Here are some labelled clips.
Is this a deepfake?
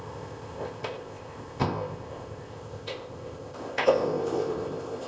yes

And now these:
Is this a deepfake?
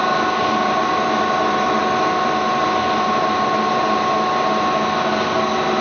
no